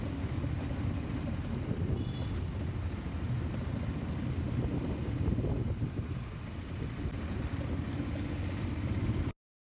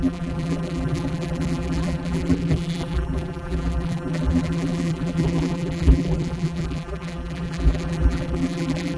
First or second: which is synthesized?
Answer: second